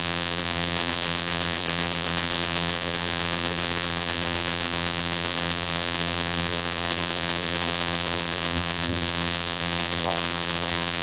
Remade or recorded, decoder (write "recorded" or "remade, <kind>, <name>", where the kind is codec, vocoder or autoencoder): remade, vocoder, BigVGAN v2